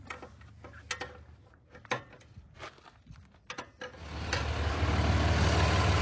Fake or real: real